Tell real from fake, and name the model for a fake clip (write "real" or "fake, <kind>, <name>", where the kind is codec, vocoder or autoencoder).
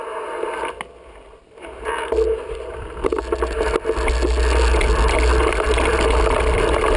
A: real